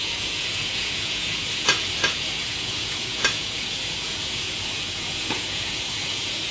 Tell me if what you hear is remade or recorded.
remade